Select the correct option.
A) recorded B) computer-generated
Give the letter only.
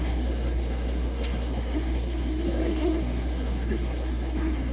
B